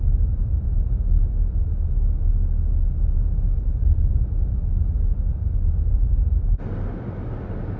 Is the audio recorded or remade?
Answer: recorded